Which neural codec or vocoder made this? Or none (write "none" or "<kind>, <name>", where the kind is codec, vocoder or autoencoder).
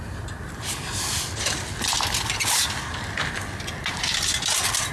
none